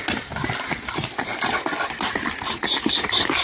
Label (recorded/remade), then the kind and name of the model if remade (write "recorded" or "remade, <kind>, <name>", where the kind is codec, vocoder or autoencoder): recorded